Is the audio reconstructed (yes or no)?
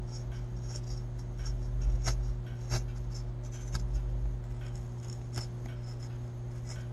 no